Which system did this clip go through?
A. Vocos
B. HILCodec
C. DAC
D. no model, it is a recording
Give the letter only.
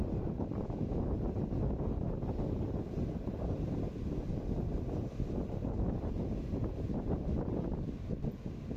D